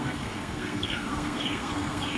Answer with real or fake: fake